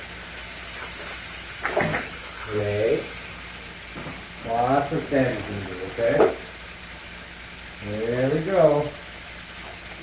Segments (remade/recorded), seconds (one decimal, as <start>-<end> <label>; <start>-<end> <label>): 0.0-1.9 recorded; 1.9-2.6 remade; 2.6-10.0 recorded